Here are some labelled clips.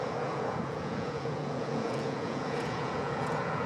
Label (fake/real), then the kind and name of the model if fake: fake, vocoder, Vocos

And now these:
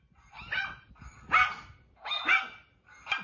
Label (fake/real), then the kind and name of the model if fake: real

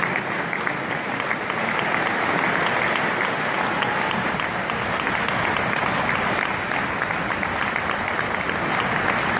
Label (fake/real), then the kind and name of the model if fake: real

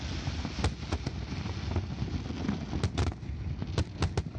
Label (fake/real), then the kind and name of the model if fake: real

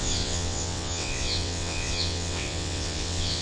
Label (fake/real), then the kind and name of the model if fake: fake, vocoder, WaveNeXt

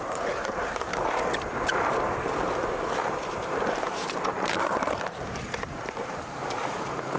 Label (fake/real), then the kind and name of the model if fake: fake, vocoder, BigVGAN v2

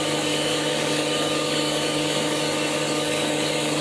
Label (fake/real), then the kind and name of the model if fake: fake, codec, DAC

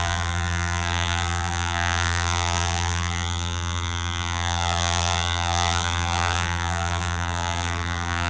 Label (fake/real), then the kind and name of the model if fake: fake, vocoder, BigVGAN v2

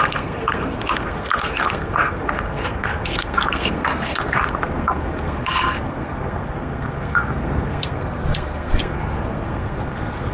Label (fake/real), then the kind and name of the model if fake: fake, codec, SNAC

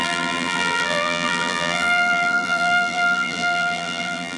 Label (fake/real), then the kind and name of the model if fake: fake, vocoder, BigVGAN v2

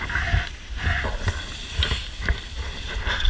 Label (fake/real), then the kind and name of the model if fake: real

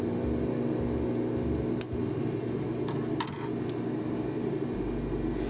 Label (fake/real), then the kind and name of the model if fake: real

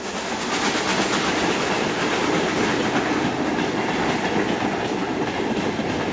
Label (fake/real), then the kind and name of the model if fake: real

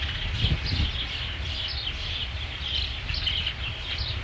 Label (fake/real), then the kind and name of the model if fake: real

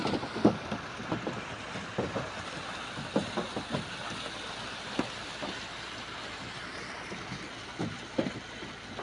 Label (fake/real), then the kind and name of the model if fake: real